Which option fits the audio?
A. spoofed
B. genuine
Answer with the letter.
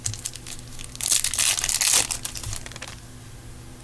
B